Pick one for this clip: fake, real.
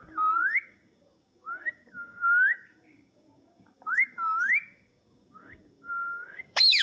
fake